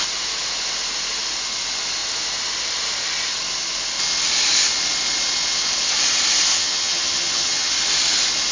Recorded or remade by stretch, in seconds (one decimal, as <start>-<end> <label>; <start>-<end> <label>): 0.0-6.5 recorded; 6.5-7.7 remade; 7.7-8.5 recorded